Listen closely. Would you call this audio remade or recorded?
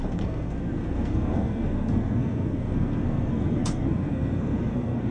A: remade